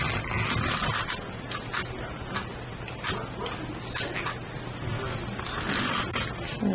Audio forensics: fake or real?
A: real